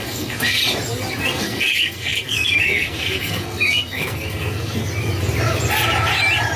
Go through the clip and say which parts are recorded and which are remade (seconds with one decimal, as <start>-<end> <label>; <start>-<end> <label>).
0.0-0.6 remade; 0.6-1.2 recorded; 1.2-4.8 remade; 4.8-6.6 recorded